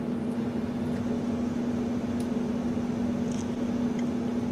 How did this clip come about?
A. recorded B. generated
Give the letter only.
A